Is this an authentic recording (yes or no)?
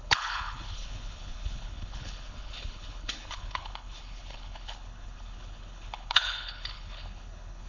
no